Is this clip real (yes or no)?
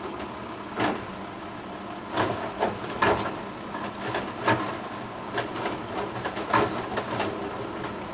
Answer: yes